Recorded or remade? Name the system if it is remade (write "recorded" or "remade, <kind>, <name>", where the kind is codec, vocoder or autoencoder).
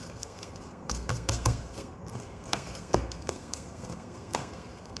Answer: remade, codec, SNAC